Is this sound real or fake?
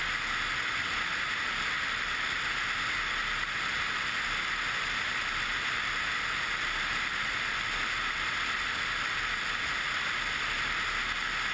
real